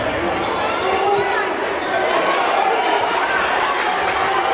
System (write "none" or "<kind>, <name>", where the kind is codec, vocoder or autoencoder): none